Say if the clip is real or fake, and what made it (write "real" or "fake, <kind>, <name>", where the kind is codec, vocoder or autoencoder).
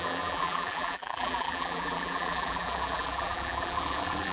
fake, vocoder, BigVGAN v2